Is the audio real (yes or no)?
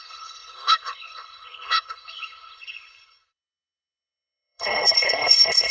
no